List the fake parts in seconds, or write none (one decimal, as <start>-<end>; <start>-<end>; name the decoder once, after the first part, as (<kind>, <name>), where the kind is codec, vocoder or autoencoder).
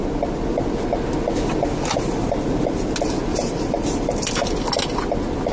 3.3-4.4 (vocoder, BigVGAN v2)